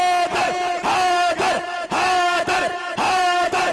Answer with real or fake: real